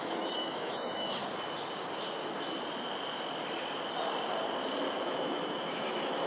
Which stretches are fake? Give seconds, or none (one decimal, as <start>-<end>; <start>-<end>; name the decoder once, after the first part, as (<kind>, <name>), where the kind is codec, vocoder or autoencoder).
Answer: 0.0-1.2 (autoencoder, DAC-VAE); 5.0-6.3